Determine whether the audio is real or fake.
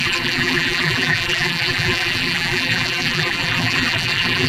fake